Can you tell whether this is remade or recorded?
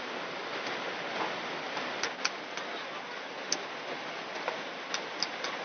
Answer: recorded